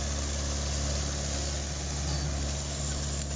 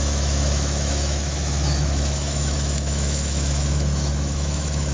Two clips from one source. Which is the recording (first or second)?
first